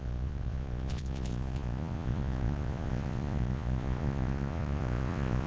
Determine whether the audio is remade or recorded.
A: remade